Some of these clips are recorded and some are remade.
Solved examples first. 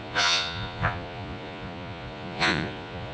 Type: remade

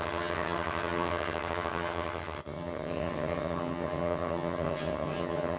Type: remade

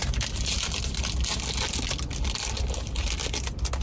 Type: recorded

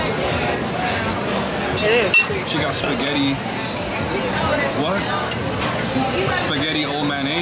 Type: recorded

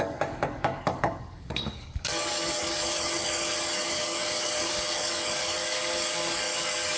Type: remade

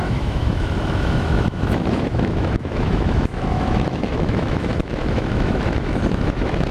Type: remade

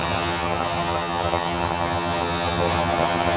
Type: remade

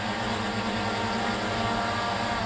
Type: recorded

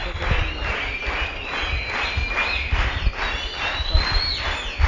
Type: recorded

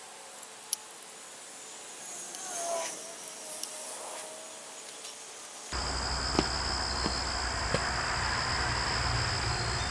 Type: recorded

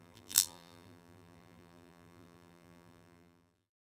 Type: remade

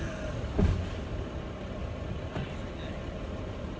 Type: recorded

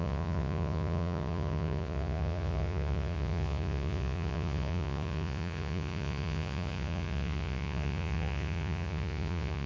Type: remade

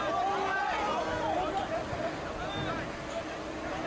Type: recorded